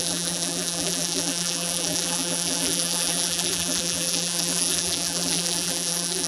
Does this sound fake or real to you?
fake